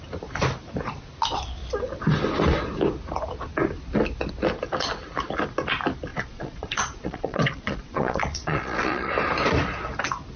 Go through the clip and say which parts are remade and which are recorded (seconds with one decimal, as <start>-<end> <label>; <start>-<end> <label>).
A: 0.0-6.1 recorded; 6.1-9.1 remade; 9.1-10.4 recorded

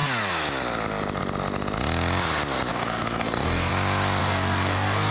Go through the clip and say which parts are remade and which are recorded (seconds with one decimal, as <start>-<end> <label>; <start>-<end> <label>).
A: 0.0-2.7 recorded; 2.7-3.7 remade; 3.7-4.2 recorded; 4.2-5.1 remade

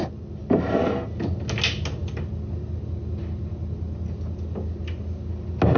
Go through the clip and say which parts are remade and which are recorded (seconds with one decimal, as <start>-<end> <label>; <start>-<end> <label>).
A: 0.0-5.8 recorded

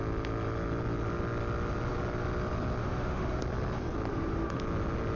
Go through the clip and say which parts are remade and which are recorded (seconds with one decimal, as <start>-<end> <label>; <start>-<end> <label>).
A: 0.0-2.8 recorded; 2.8-3.4 remade; 3.4-4.1 recorded; 4.1-4.6 remade; 4.6-5.2 recorded

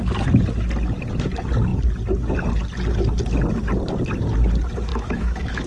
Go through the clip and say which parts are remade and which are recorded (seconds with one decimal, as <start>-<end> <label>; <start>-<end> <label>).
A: 0.0-4.9 recorded; 4.9-5.7 remade

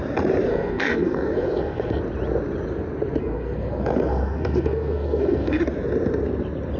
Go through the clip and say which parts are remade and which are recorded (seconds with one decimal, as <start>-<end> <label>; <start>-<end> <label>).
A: 0.0-0.5 recorded; 0.5-2.0 remade; 2.0-3.2 recorded; 3.2-5.6 remade; 5.6-6.8 recorded

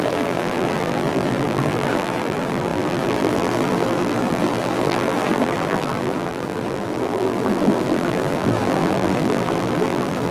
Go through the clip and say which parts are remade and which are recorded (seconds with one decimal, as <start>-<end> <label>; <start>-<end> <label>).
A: 0.0-10.3 remade

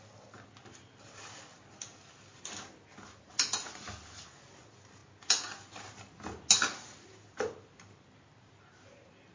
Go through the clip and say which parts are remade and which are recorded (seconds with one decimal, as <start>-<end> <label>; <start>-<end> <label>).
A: 0.0-9.3 recorded